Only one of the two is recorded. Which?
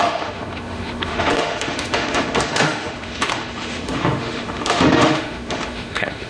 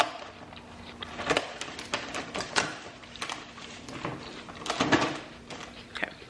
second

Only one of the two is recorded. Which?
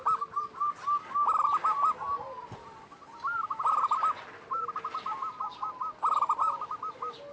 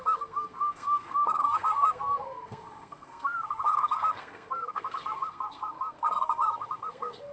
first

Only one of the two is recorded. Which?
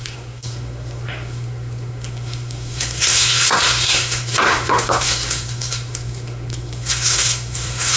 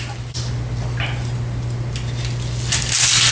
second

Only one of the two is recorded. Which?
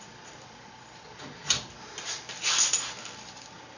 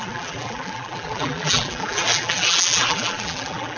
first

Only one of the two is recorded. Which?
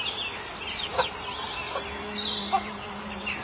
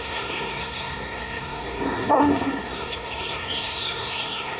first